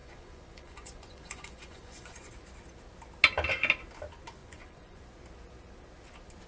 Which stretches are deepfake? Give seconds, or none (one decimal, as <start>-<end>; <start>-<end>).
0.0-2.3; 4.4-5.0